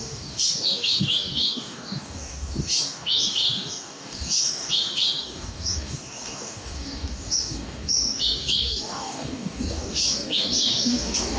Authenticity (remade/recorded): remade